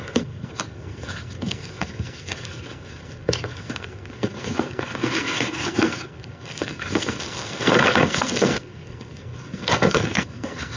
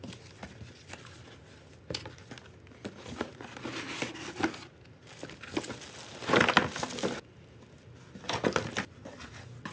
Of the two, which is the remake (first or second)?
first